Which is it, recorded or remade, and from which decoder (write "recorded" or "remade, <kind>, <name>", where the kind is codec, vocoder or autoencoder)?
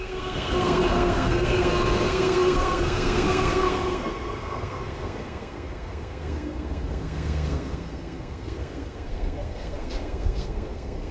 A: remade, codec, SNAC